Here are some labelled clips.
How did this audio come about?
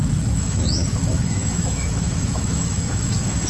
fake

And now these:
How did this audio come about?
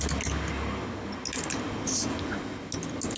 real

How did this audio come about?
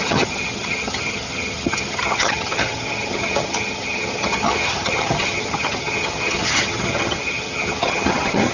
fake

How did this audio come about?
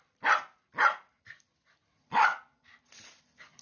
real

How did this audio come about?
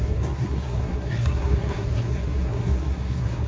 fake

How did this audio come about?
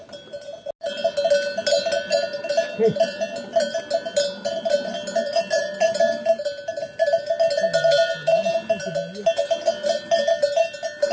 real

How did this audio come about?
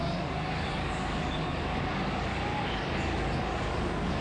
fake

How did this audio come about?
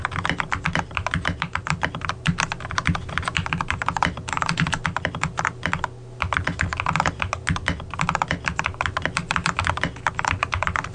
real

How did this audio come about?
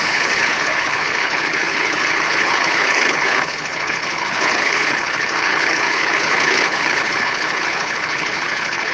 fake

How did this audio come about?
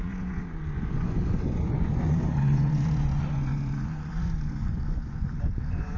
fake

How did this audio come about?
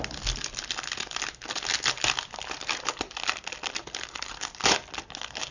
real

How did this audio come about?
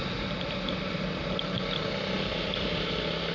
real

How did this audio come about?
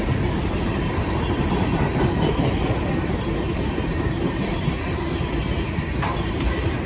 fake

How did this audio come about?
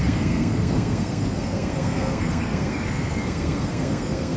fake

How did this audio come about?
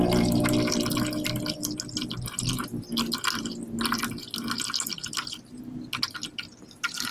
real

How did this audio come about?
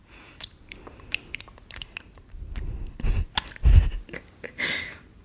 real